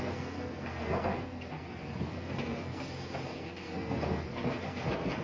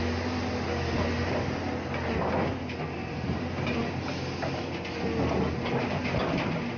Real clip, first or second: second